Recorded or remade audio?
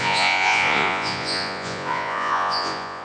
remade